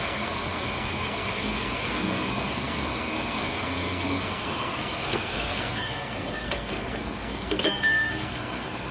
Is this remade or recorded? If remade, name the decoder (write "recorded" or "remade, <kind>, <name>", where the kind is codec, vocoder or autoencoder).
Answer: remade, codec, SNAC